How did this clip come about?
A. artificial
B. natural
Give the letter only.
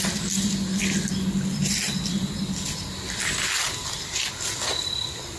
B